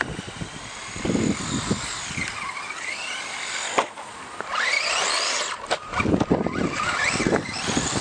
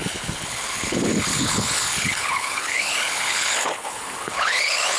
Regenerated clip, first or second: second